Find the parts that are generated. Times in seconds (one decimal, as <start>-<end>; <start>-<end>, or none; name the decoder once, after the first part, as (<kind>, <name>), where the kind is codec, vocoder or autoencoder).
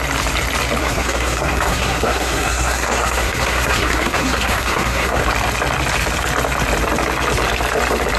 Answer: 0.8-5.2 (codec, SNAC)